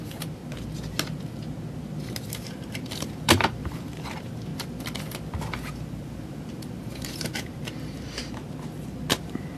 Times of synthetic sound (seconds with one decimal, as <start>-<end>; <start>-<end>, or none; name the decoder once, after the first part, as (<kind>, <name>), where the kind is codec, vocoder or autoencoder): 0.0-0.4 (vocoder, BigVGAN v2); 2.5-4.5; 5.5-8.2; 9.2-9.6